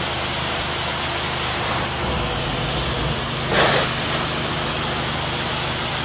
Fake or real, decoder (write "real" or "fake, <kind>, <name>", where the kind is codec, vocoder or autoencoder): real